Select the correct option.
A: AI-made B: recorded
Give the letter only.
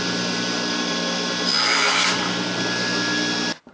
B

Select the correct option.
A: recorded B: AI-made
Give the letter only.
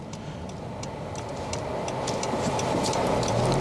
A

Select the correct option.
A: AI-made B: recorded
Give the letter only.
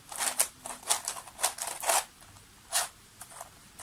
A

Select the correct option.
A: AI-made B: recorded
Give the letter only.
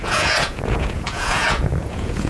A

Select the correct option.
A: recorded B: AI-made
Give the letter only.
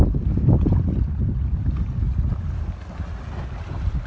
A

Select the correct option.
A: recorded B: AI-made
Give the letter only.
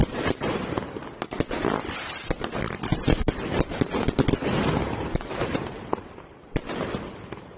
A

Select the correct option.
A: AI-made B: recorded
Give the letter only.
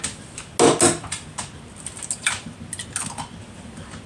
B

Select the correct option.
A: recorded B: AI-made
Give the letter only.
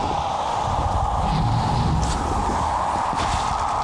A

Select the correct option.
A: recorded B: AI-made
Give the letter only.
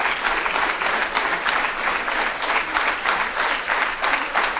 A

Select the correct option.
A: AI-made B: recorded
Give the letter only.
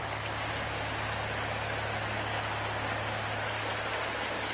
B